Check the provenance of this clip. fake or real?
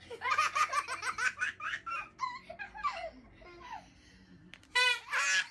real